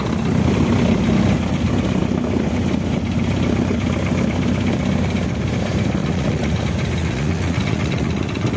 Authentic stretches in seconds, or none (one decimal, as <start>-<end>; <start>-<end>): 0.0-6.0; 6.6-7.0